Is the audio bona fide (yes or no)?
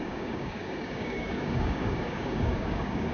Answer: no